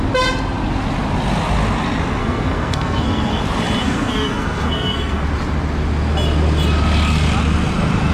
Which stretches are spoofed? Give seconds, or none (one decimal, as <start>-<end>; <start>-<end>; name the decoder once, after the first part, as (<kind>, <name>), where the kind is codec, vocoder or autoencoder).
2.2-3.4 (codec, SNAC); 3.8-5.2